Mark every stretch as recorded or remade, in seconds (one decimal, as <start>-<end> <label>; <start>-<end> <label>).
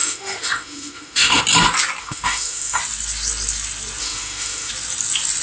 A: 0.0-1.4 remade; 1.4-2.0 recorded; 2.0-2.8 remade; 2.8-4.0 recorded; 4.0-4.7 remade; 4.7-5.4 recorded